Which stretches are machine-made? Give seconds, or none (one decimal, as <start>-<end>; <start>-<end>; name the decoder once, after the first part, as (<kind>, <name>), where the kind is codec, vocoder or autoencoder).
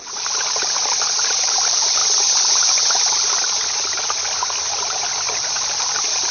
0.0-2.0 (vocoder, BigVGAN v2); 5.8-6.3